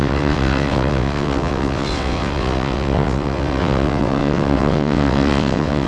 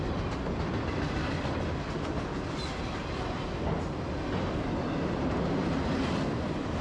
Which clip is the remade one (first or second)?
first